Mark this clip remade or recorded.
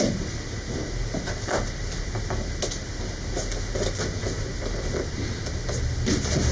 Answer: recorded